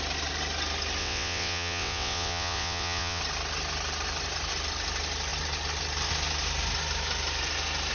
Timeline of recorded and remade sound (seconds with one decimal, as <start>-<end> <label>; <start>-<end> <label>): 0.0-1.0 recorded; 1.0-3.2 remade; 3.2-7.9 recorded